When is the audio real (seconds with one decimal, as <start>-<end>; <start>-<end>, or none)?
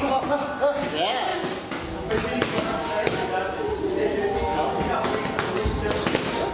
0.0-6.5